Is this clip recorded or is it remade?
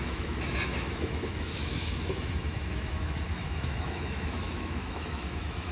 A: remade